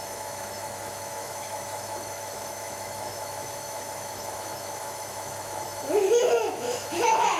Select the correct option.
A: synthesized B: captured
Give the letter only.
A